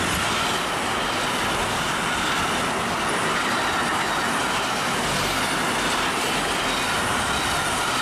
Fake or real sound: real